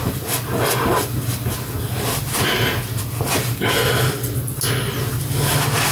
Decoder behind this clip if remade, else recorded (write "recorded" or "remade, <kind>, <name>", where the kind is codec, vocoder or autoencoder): recorded